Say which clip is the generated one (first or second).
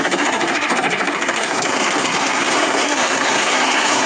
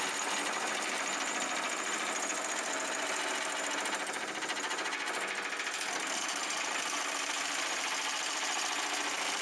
first